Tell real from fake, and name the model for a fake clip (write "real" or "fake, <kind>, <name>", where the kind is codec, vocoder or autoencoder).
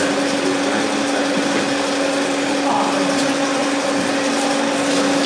real